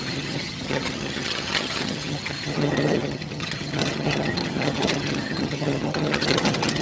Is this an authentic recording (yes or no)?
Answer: no